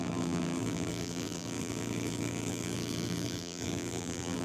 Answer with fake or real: fake